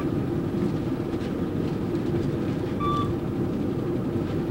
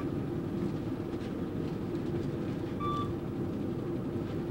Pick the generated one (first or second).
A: first